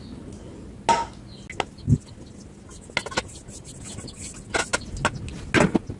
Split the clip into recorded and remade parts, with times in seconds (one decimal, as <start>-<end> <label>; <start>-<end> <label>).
0.0-6.0 recorded

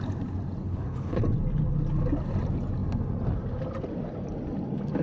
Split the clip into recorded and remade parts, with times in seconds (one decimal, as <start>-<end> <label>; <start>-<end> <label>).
0.0-0.6 recorded; 0.6-1.2 remade; 1.2-5.0 recorded

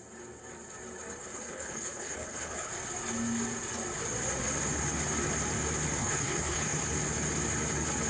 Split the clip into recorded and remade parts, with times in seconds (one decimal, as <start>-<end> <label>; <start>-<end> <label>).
0.0-1.2 recorded; 1.2-2.7 remade; 2.7-6.0 recorded; 6.0-6.8 remade; 6.8-8.1 recorded

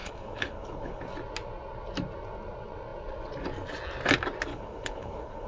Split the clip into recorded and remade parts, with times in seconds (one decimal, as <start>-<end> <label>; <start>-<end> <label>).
0.0-1.0 remade; 1.0-4.5 recorded; 4.5-5.5 remade

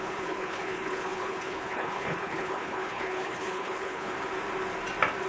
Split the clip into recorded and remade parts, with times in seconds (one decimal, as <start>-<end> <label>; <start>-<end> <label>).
0.0-4.1 remade; 4.1-5.3 recorded

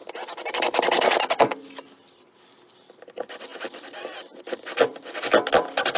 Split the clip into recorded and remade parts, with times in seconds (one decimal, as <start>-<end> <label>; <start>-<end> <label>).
0.0-6.0 recorded